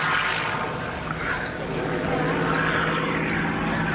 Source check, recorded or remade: recorded